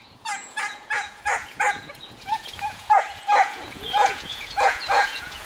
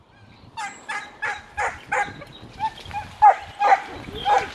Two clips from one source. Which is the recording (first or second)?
second